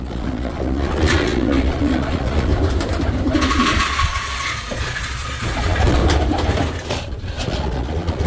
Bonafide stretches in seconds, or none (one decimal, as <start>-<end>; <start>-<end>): 2.5-3.5; 6.0-6.9